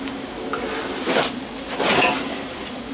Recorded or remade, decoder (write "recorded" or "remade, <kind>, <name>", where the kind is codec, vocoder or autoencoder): recorded